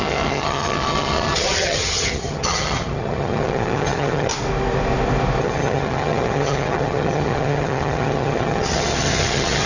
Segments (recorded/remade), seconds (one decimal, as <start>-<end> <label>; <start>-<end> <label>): 0.0-4.3 remade; 4.3-5.4 recorded; 5.4-9.7 remade